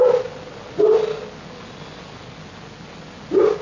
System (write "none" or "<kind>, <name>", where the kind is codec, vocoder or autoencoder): none